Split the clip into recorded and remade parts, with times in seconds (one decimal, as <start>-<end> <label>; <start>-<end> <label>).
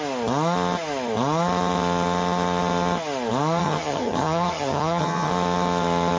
0.0-3.6 recorded; 3.6-5.3 remade; 5.3-6.2 recorded